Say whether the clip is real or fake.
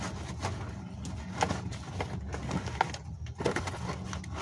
real